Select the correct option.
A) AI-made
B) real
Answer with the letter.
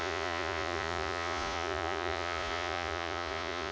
A